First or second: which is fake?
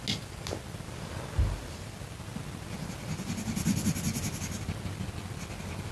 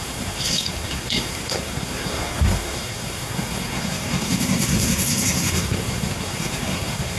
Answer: second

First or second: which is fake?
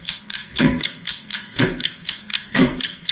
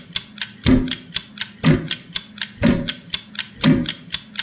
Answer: first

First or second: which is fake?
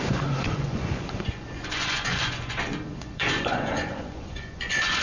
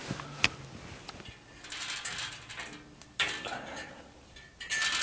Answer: first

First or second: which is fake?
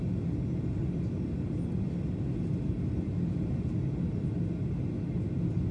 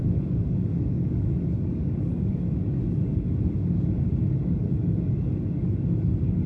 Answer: second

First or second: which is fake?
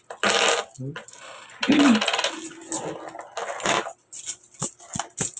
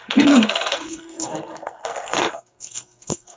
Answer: second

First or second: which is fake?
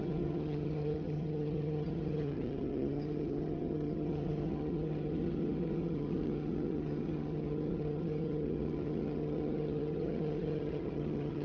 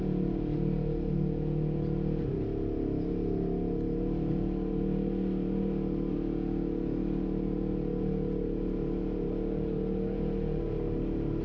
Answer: first